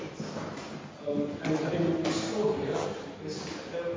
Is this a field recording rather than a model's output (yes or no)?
yes